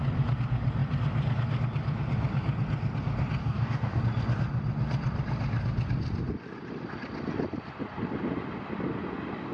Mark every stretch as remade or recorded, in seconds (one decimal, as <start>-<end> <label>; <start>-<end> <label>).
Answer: 0.0-3.4 recorded; 3.4-4.0 remade; 4.0-9.5 recorded